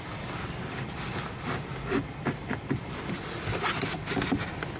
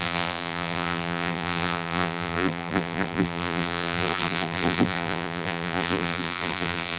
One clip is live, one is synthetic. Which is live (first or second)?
first